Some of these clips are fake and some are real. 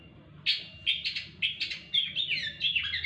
real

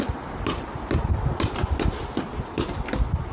real